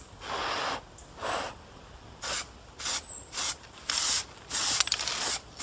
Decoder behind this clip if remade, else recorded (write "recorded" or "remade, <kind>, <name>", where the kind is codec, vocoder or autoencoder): recorded